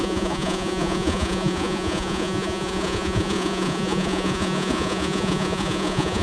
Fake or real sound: fake